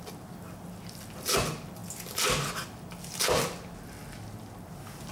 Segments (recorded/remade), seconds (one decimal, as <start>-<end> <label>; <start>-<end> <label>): 0.0-5.1 recorded